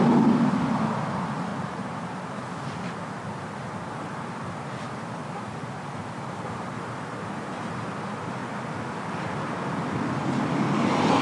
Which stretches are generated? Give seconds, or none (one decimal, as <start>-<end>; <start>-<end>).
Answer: 1.5-2.3